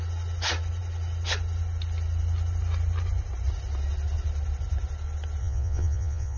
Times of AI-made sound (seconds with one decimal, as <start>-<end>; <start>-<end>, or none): 5.4-6.4